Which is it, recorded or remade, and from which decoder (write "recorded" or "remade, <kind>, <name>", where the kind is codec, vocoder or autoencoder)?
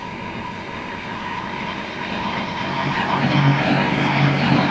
remade, codec, SNAC